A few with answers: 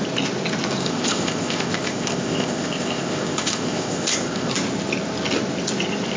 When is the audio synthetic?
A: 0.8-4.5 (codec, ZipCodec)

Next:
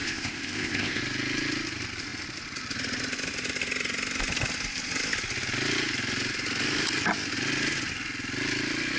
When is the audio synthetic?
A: 0.0-1.0 (codec, ZipCodec)

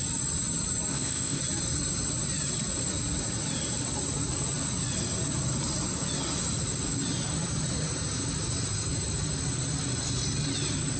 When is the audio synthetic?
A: 0.9-1.4 (codec, ZipCodec)

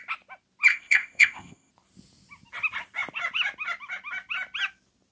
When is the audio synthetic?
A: 0.7-1.7 (codec, ZipCodec)

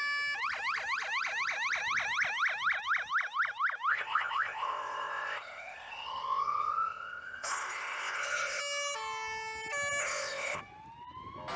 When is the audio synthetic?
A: 3.9-8.6 (codec, ZipCodec); 10.0-10.6

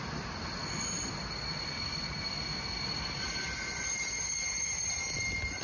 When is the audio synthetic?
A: none

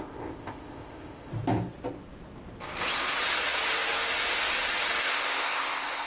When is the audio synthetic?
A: 0.0-1.3 (codec, ZipCodec); 5.0-6.1

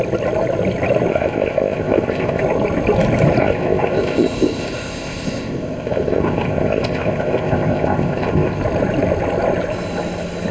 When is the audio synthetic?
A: 1.1-2.4 (codec, ZipCodec); 3.4-8.6